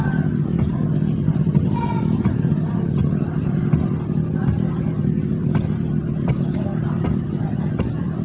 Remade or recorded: recorded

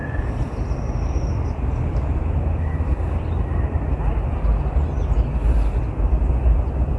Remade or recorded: recorded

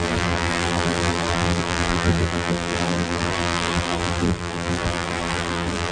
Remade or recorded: remade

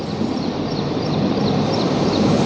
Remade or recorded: remade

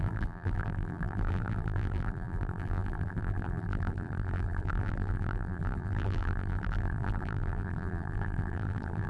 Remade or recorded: remade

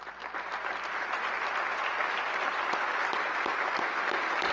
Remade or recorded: recorded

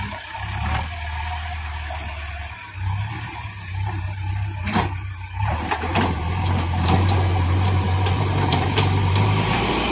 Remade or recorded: remade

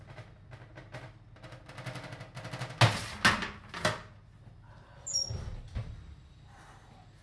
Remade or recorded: recorded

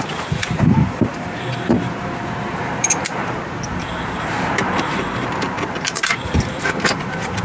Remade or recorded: remade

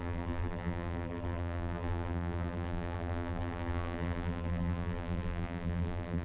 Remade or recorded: remade